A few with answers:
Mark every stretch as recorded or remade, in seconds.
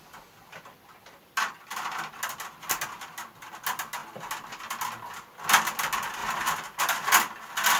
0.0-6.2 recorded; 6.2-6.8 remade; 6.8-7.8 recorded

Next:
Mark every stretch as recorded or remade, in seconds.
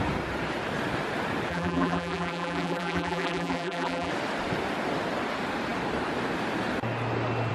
0.0-1.5 recorded; 1.5-4.1 remade; 4.1-7.5 recorded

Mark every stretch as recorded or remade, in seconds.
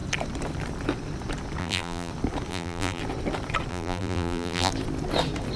0.0-1.6 recorded; 1.6-2.1 remade; 2.1-2.5 recorded; 2.5-3.0 remade; 3.0-3.7 recorded; 3.7-4.7 remade; 4.7-5.6 recorded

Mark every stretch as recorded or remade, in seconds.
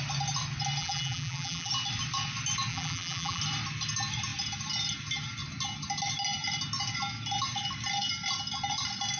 0.0-0.8 recorded; 0.8-1.7 remade; 1.7-2.7 recorded; 2.7-3.4 remade; 3.4-9.2 recorded